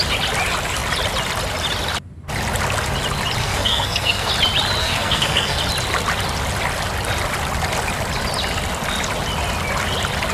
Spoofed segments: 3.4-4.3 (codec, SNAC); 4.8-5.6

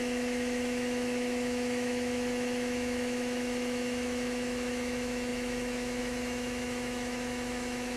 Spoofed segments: 0.0-8.0 (autoencoder, DAC-VAE)

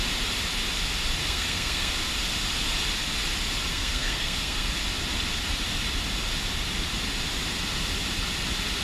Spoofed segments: 1.2-1.9 (codec, SNAC); 3.7-4.7

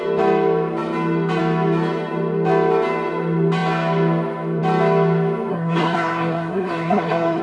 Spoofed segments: 5.5-7.4 (codec, SNAC)

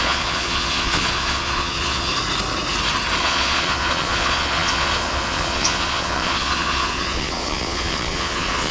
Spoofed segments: 0.0-2.1 (vocoder, Vocos); 3.2-8.7

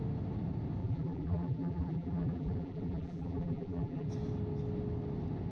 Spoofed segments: 0.8-4.1 (vocoder, BigVGAN v2)